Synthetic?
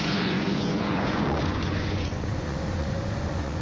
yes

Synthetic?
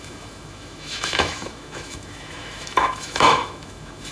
yes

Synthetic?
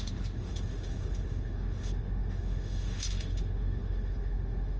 yes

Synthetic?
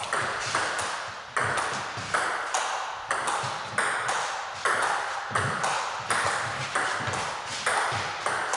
no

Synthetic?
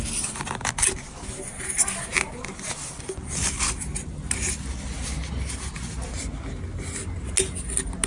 no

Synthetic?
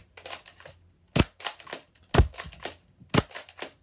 no